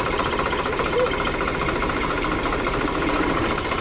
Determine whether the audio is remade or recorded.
remade